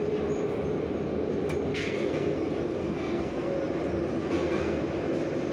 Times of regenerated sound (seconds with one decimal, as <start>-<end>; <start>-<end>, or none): 1.7-2.4; 2.8-3.5; 4.2-4.8